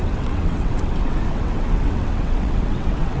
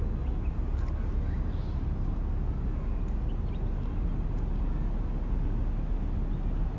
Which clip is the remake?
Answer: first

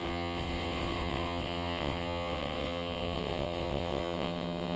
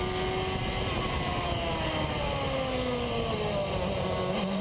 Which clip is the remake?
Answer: first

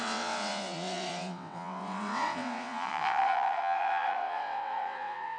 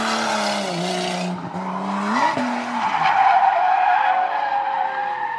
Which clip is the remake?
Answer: first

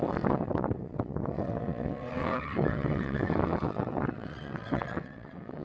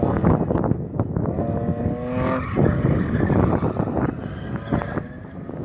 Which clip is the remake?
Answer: first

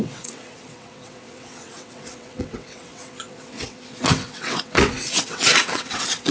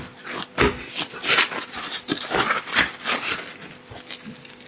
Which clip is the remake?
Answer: first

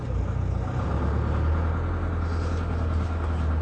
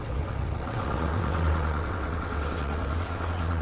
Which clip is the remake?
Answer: second